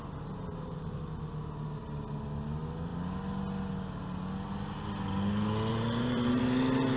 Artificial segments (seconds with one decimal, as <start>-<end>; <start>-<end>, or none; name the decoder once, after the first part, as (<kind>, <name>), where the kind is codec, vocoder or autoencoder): 0.5-1.0 (vocoder, BigVGAN v2); 5.7-6.4